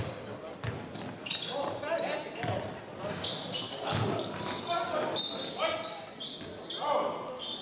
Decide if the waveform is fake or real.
real